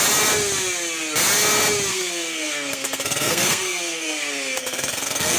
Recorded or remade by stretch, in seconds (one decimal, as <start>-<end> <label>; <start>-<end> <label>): 0.0-1.9 recorded; 1.9-5.4 remade